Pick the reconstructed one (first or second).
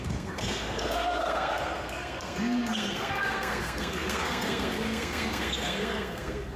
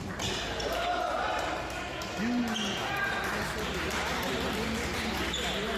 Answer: first